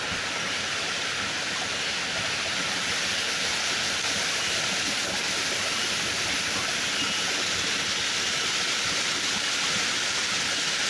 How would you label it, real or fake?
real